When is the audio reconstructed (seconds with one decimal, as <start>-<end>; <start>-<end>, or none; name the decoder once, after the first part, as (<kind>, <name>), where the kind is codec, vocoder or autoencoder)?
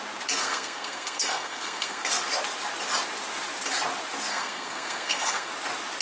0.4-2.1 (codec, SNAC); 4.3-5.5